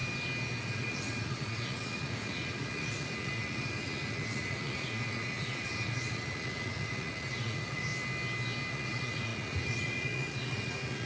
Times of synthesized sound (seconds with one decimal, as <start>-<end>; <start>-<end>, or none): 0.6-7.9; 8.7-11.1